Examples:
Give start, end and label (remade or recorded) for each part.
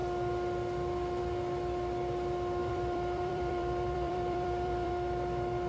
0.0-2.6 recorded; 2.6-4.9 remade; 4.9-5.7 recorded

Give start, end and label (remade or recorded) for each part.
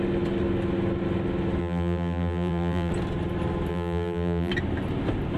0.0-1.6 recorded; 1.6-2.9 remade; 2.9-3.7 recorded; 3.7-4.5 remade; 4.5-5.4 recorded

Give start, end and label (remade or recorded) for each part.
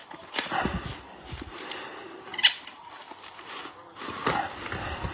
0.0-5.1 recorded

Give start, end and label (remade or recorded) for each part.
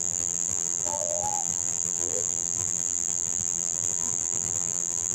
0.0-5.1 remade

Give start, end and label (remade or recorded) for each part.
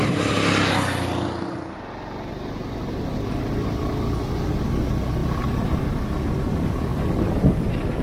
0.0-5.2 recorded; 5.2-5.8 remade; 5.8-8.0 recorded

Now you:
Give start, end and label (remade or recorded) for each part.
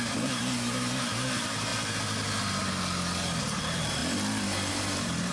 0.0-1.7 remade; 1.7-3.4 recorded; 3.4-4.0 remade; 4.0-4.7 recorded; 4.7-5.3 remade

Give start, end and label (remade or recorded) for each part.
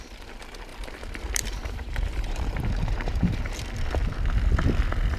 0.0-0.7 recorded; 0.7-3.4 remade; 3.4-5.2 recorded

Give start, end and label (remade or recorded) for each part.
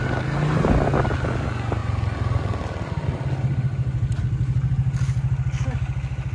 0.0-6.3 recorded